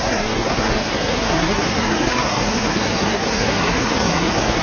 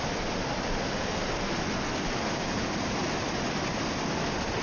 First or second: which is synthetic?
first